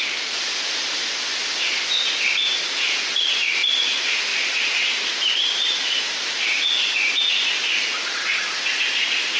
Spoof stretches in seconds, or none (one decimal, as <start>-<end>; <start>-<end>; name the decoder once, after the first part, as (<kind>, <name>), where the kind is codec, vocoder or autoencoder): 4.3-7.5 (vocoder, BigVGAN v2)